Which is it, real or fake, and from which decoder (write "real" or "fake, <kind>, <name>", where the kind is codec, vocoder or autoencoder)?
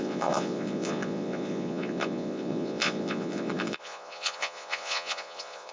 fake, vocoder, Vocos